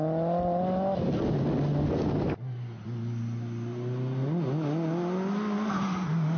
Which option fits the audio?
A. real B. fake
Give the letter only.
A